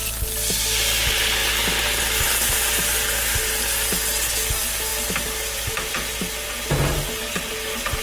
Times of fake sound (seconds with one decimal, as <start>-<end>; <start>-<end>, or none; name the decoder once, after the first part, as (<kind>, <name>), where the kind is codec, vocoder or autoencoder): 4.9-5.9 (vocoder, BigVGAN v2)